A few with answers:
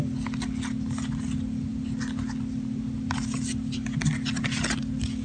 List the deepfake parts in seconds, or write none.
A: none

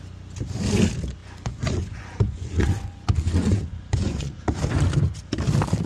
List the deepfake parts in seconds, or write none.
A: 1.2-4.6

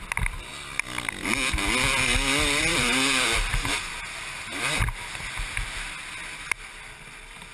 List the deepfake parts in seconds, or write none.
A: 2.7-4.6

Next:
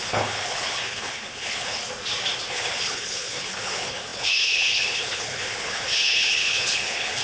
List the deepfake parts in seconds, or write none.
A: 0.0-1.8; 2.5-7.2

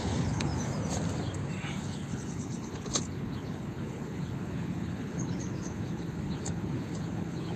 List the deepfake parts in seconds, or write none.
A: 0.0-0.5; 1.8-7.6

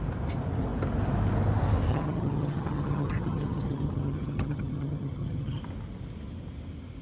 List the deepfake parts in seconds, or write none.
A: 1.9-5.6

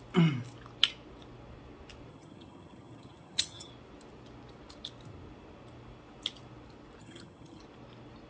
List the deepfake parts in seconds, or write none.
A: 2.1-3.7; 7.0-7.6

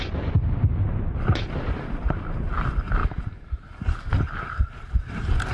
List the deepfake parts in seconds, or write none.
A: none